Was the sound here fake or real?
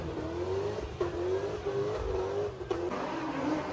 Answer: real